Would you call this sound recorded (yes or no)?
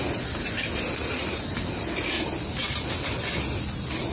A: yes